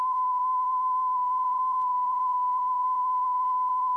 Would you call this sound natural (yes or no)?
no